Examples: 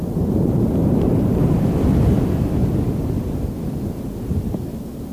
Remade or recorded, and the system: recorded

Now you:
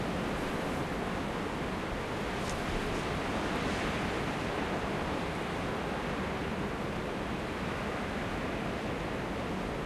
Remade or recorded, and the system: recorded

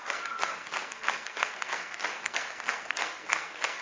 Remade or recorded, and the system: remade, codec, SNAC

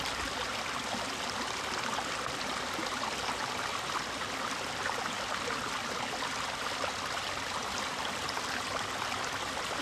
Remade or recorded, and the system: recorded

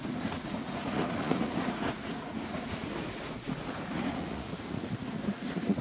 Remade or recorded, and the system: remade, vocoder, Vocos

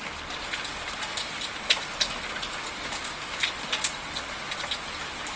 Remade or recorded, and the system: recorded